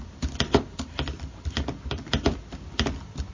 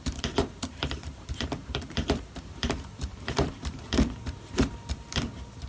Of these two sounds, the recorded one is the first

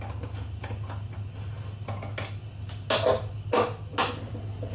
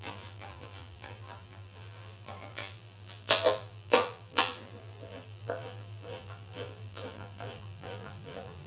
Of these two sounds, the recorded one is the first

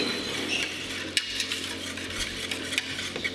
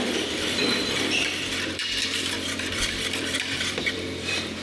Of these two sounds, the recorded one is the first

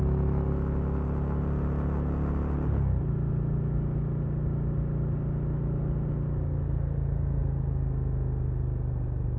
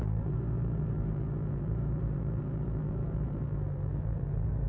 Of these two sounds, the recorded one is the first